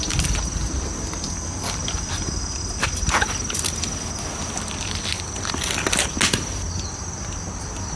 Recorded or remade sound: recorded